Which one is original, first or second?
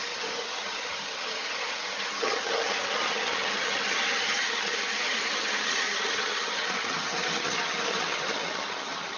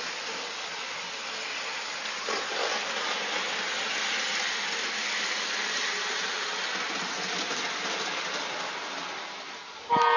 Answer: second